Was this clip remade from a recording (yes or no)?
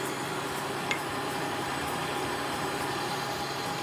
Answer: yes